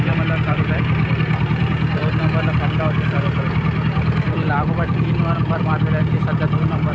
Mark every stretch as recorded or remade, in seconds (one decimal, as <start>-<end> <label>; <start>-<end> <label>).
0.0-2.0 remade; 2.0-3.5 recorded; 3.5-6.9 remade